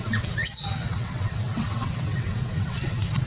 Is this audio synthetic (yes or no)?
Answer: yes